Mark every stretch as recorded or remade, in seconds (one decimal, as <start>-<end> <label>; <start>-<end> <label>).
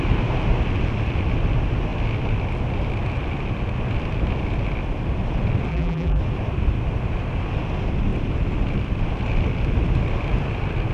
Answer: 0.0-5.7 recorded; 5.7-6.2 remade; 6.2-10.9 recorded